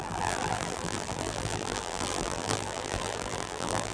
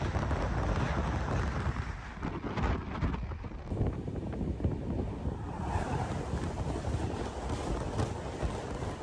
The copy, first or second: first